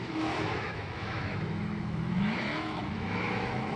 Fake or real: fake